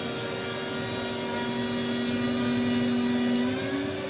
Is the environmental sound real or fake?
real